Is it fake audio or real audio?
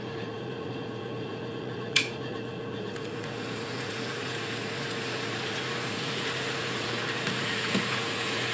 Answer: fake